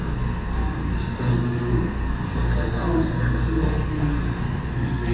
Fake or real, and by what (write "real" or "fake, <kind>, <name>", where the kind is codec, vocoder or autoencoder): fake, codec, SNAC